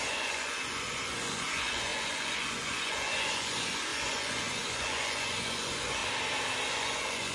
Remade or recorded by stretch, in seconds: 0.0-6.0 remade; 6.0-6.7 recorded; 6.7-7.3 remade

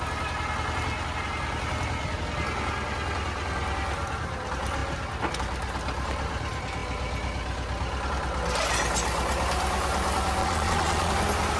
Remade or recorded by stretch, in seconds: 0.0-10.4 recorded; 10.4-11.1 remade; 11.1-11.6 recorded

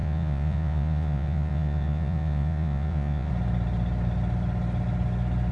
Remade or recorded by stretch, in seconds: 0.0-3.3 remade; 3.3-5.5 recorded

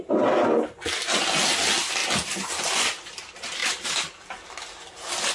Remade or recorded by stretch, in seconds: 0.0-5.3 recorded